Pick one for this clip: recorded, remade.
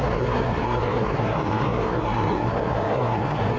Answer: remade